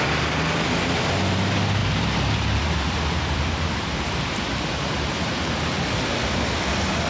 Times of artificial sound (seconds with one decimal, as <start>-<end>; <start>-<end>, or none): 1.8-6.1